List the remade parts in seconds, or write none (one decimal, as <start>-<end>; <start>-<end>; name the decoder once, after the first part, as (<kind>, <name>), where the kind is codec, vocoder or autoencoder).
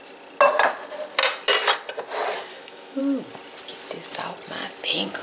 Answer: 2.5-3.0 (autoencoder, DAC-VAE)